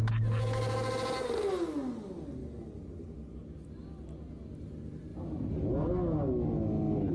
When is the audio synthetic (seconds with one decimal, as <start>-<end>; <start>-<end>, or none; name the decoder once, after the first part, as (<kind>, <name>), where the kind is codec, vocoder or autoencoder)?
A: none